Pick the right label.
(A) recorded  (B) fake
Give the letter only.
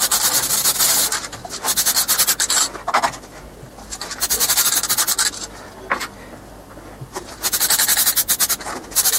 A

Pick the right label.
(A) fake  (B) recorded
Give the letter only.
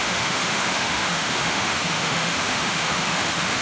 A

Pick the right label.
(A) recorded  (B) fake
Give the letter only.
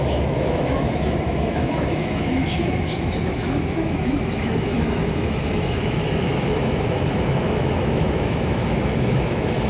B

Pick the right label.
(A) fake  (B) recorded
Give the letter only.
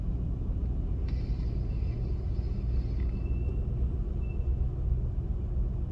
B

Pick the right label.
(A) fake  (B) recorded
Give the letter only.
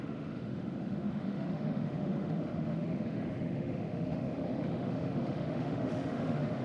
A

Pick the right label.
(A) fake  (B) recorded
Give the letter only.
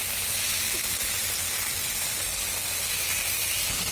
B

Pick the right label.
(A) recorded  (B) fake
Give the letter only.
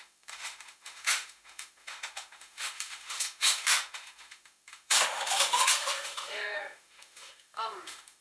B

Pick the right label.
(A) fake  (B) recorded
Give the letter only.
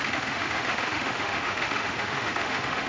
A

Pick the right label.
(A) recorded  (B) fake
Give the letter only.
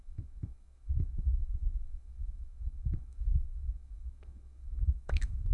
B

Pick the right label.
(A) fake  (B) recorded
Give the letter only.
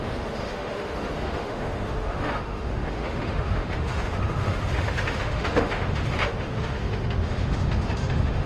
A